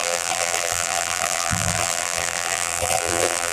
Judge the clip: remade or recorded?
remade